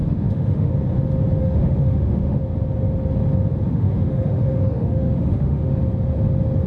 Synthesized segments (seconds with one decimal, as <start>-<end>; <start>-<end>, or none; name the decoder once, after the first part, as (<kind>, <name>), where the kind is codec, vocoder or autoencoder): 0.0-0.7 (autoencoder, DAC-VAE); 1.4-2.4; 3.7-5.7